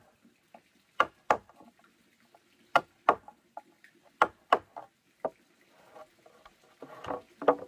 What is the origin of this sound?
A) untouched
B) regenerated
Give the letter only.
A